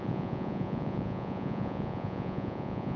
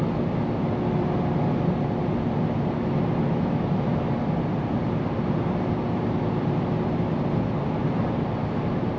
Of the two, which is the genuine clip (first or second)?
second